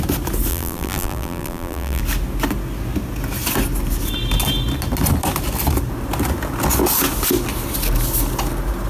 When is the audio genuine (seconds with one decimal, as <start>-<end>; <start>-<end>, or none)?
0.0-0.5; 2.0-8.9